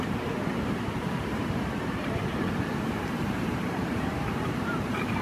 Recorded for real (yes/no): no